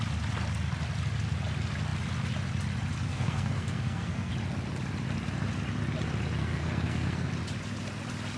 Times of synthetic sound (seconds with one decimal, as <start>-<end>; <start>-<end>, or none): 3.1-4.3; 6.4-7.3